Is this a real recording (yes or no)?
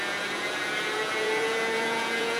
no